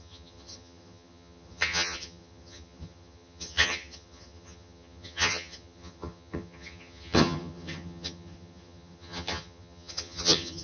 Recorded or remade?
remade